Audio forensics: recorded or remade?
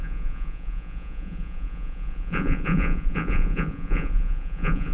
remade